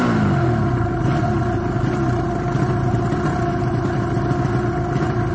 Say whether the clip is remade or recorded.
recorded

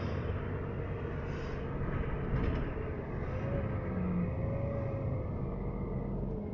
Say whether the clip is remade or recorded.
recorded